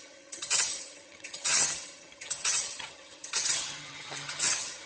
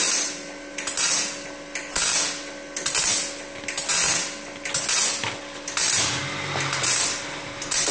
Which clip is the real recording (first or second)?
second